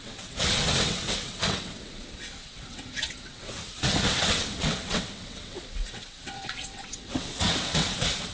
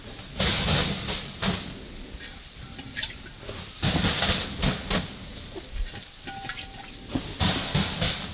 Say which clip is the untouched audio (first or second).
second